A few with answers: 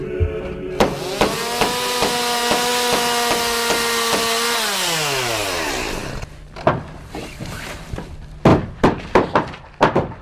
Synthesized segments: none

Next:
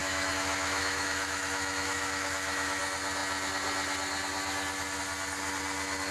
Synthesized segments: 0.0-2.8 (autoencoder, DAC-VAE)